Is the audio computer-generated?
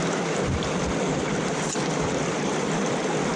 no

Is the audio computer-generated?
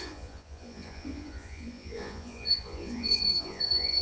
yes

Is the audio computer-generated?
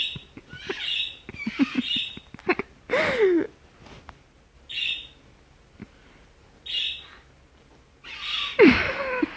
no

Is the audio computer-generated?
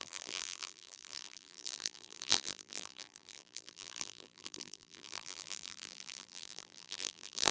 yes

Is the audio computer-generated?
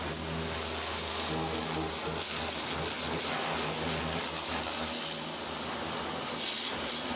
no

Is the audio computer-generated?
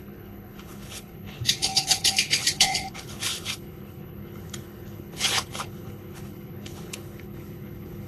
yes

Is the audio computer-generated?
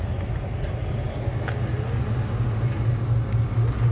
no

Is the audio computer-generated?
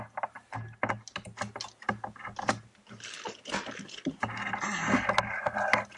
no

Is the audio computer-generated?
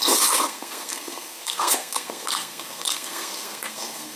yes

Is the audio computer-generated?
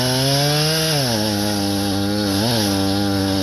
no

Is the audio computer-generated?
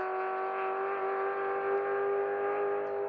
no